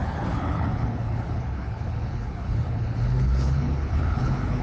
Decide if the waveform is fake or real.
fake